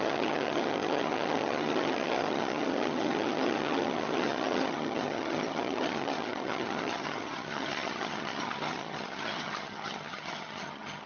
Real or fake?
fake